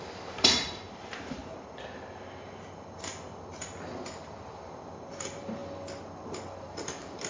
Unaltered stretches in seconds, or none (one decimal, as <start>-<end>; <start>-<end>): 1.4-5.1; 5.6-6.6